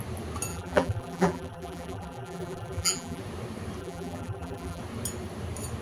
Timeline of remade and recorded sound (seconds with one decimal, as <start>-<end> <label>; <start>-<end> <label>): 0.0-0.5 recorded; 0.5-3.2 remade; 3.2-3.8 recorded; 3.8-4.8 remade; 4.8-5.8 recorded